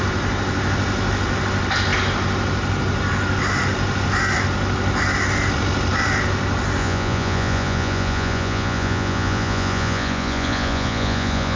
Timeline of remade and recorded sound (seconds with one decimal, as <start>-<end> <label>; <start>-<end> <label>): 0.0-6.8 recorded; 6.8-11.6 remade